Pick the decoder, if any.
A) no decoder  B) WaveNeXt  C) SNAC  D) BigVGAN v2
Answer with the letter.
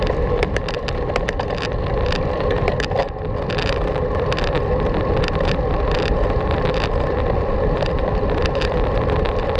D